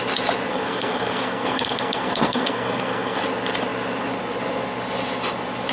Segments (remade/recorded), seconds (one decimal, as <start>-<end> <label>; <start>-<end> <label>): 0.0-0.5 recorded; 0.5-3.2 remade; 3.2-5.7 recorded